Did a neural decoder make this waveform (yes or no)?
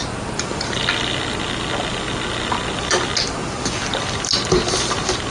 no